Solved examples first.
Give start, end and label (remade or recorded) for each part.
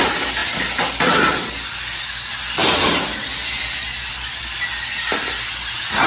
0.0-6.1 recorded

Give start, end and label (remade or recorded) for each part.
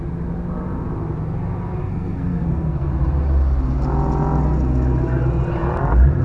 0.0-1.8 recorded; 1.8-2.9 remade; 2.9-6.2 recorded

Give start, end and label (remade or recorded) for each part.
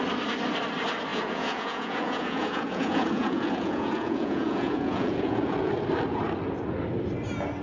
0.0-1.1 recorded; 1.1-5.7 remade; 5.7-7.6 recorded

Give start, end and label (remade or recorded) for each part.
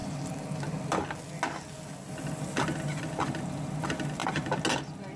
0.0-5.2 recorded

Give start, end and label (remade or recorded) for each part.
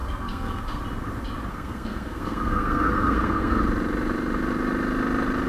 0.0-0.8 remade; 0.8-1.5 recorded; 1.5-3.6 remade; 3.6-5.5 recorded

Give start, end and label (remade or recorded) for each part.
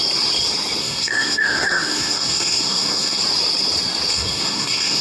0.0-0.8 recorded; 0.8-3.2 remade; 3.2-4.1 recorded; 4.1-5.0 remade